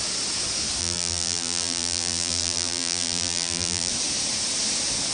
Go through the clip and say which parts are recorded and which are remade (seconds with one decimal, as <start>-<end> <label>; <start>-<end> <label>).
0.0-0.8 recorded; 0.8-3.9 remade; 3.9-5.1 recorded